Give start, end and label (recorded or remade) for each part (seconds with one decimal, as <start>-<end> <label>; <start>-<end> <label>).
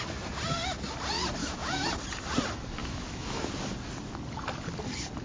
0.0-1.4 recorded; 1.4-1.9 remade; 1.9-2.8 recorded; 2.8-3.5 remade; 3.5-5.2 recorded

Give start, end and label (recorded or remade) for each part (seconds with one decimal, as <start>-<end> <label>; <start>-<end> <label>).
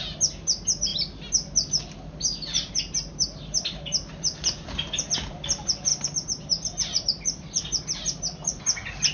0.0-9.1 recorded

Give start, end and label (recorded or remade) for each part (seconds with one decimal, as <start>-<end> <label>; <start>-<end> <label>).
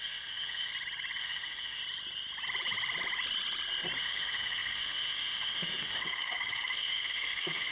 0.0-0.7 remade; 0.7-1.2 recorded; 1.2-1.8 remade; 1.8-4.0 recorded; 4.0-7.7 remade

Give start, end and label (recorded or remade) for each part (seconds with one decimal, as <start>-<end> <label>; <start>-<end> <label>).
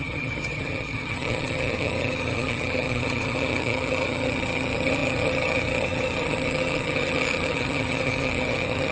0.0-8.9 remade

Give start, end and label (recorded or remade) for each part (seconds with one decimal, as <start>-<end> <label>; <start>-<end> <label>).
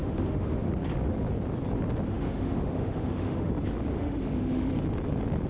0.0-0.7 remade; 0.7-2.1 recorded; 2.1-3.5 remade; 3.5-3.9 recorded; 3.9-4.7 remade; 4.7-5.5 recorded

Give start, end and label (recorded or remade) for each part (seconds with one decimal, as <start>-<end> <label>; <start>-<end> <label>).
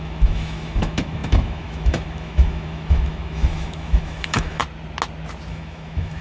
0.0-4.6 remade; 4.6-5.5 recorded; 5.5-6.2 remade